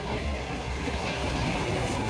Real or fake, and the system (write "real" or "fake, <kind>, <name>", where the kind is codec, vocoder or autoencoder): fake, codec, SNAC